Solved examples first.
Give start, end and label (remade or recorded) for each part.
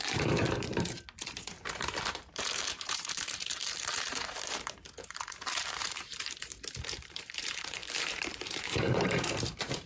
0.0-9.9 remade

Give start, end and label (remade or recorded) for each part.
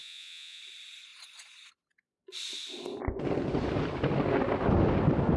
0.0-0.6 remade; 0.6-5.4 recorded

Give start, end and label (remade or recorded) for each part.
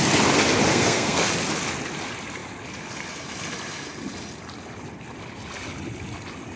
0.0-0.7 recorded; 0.7-1.3 remade; 1.3-6.6 recorded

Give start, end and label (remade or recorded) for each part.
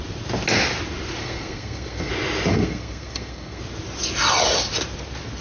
0.0-1.2 recorded; 1.2-2.1 remade; 2.1-2.5 recorded; 2.5-3.6 remade; 3.6-5.4 recorded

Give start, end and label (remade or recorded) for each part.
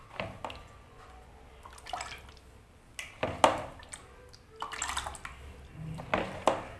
0.0-0.6 recorded; 0.6-1.3 remade; 1.3-6.8 recorded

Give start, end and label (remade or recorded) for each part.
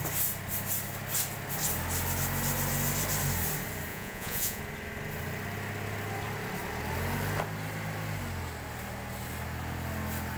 0.0-3.9 recorded; 3.9-4.6 remade; 4.6-10.4 recorded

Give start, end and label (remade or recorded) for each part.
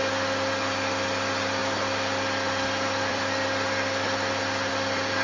0.0-1.6 recorded; 1.6-4.7 remade; 4.7-5.2 recorded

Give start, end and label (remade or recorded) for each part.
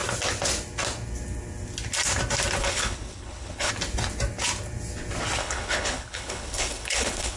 0.0-2.6 recorded; 2.6-3.7 remade; 3.7-5.4 recorded; 5.4-7.4 remade